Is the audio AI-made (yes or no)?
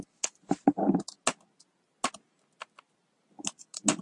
no